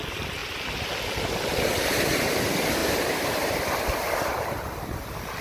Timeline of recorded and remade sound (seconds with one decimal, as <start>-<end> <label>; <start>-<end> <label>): 0.0-5.4 recorded